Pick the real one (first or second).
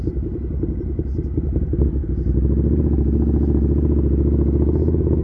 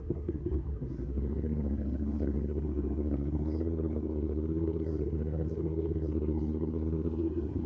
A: first